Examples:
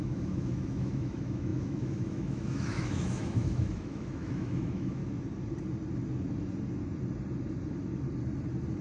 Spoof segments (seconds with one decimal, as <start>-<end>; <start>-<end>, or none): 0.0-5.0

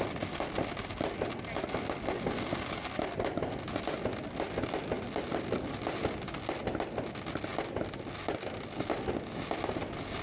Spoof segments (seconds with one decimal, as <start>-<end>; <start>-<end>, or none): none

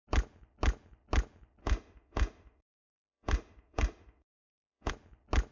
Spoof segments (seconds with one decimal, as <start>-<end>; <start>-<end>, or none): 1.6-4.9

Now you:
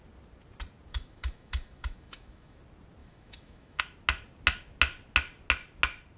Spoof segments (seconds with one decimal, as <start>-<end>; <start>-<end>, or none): 0.9-2.6; 3.0-3.8

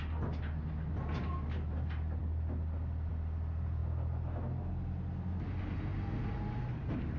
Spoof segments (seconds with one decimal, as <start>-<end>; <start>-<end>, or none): none

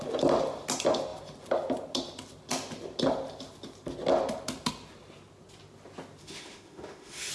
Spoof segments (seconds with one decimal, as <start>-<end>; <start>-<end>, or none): 6.2-7.3

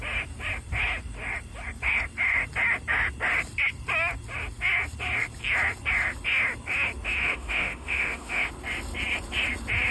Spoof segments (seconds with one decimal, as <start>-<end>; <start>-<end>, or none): 7.2-8.5

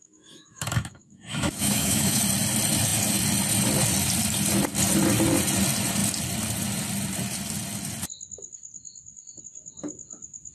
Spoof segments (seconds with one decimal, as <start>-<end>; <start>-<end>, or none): 0.0-2.2